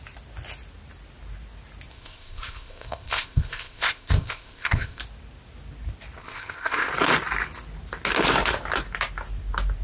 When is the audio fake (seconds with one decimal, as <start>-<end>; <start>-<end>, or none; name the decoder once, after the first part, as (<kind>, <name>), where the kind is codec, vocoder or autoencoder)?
1.9-5.0 (codec, ZipCodec); 6.2-6.9